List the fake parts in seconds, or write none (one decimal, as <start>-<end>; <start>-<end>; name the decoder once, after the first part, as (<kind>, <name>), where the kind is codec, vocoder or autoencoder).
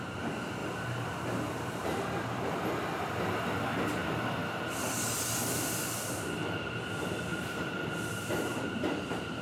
0.6-2.7 (vocoder, BigVGAN v2); 7.3-9.4